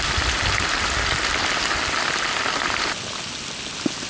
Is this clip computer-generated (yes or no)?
no